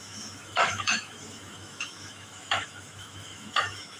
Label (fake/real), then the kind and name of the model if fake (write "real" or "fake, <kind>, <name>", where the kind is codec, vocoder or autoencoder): fake, autoencoder, DAC-VAE